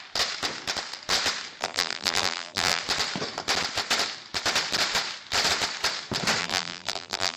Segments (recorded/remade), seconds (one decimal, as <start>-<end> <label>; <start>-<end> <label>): 0.0-1.6 recorded; 1.6-2.8 remade; 2.8-6.4 recorded; 6.4-7.4 remade